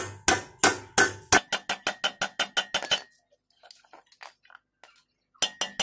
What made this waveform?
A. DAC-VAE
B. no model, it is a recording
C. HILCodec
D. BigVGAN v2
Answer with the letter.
B